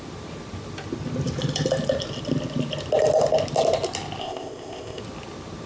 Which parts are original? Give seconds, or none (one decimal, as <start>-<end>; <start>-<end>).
0.0-4.2; 5.0-5.7